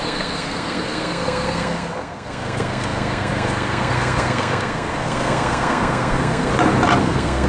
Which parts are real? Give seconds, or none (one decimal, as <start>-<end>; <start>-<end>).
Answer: 6.5-7.0